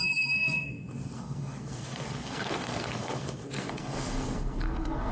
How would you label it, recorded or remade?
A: remade